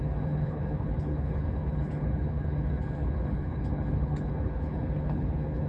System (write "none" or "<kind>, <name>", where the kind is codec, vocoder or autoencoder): codec, HILCodec